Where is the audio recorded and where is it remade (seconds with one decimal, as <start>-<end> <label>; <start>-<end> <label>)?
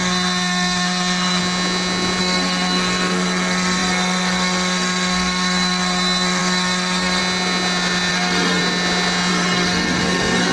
0.0-1.4 remade; 1.4-2.2 recorded; 2.2-7.2 remade; 7.2-8.1 recorded; 8.1-8.6 remade; 8.6-9.3 recorded; 9.3-10.5 remade